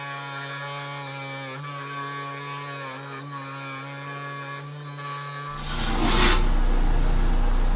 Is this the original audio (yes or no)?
yes